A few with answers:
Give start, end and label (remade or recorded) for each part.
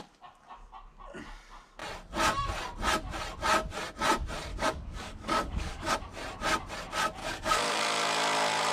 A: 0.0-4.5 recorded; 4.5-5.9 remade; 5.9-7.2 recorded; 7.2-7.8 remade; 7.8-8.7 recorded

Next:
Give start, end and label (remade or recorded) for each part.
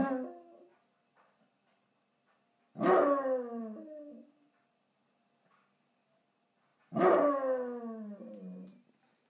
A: 0.0-6.7 recorded; 6.7-7.3 remade; 7.3-9.3 recorded